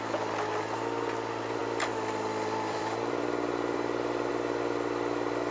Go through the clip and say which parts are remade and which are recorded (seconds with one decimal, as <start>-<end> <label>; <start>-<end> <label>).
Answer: 0.0-1.6 recorded; 1.6-4.3 remade; 4.3-5.5 recorded

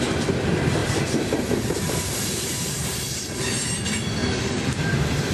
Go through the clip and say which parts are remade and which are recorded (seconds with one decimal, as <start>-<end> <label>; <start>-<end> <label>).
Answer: 0.0-0.8 recorded; 0.8-3.4 remade; 3.4-5.3 recorded

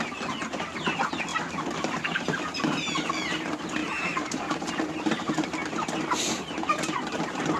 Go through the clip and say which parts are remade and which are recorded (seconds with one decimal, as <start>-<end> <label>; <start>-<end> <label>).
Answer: 0.0-1.3 recorded; 1.3-3.1 remade; 3.1-3.8 recorded; 3.8-4.7 remade; 4.7-7.6 recorded

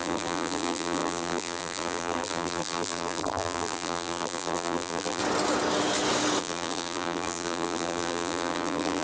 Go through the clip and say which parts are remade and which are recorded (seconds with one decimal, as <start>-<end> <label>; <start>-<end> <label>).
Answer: 0.0-5.2 remade; 5.2-6.4 recorded; 6.4-9.0 remade

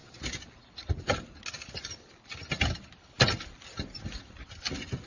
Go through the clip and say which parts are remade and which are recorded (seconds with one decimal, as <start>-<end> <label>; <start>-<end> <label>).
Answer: 0.0-5.1 recorded